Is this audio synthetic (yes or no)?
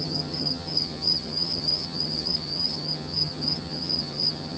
yes